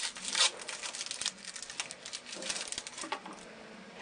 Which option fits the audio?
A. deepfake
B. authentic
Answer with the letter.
B